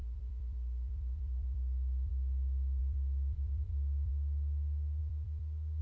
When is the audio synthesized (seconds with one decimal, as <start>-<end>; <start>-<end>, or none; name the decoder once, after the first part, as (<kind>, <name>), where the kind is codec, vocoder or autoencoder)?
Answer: 0.0-2.1 (vocoder, BigVGAN v2); 2.8-4.1; 5.0-5.8